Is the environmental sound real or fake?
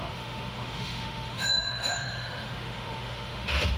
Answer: fake